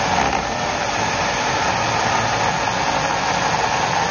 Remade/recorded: recorded